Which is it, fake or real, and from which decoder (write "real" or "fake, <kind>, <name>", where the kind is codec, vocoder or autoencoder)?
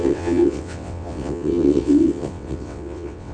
fake, vocoder, WaveNeXt